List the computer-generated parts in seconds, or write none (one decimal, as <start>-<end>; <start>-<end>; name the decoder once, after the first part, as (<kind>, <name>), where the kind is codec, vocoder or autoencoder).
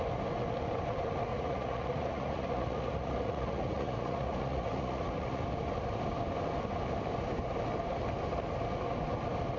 1.3-5.4 (vocoder, Vocos)